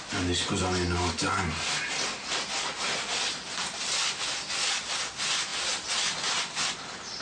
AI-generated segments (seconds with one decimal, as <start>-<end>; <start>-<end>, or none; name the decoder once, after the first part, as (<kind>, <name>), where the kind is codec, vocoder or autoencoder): none